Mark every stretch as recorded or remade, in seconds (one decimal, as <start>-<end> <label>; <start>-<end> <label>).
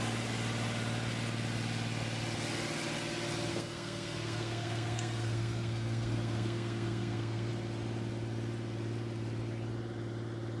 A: 0.0-3.5 recorded; 3.5-7.5 remade; 7.5-10.6 recorded